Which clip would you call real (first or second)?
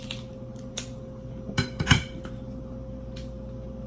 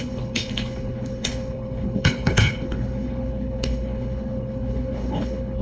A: first